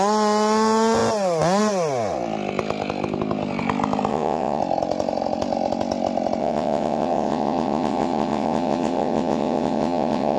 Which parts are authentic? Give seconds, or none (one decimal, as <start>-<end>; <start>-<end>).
0.0-4.1; 4.6-6.4